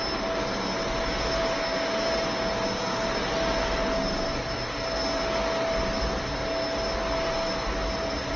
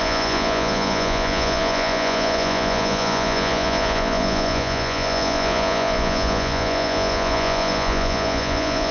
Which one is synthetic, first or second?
second